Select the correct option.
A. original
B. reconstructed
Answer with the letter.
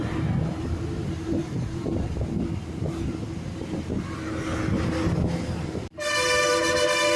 A